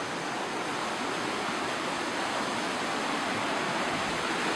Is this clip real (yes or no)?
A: yes